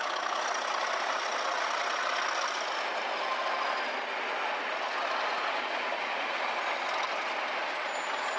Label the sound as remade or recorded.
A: recorded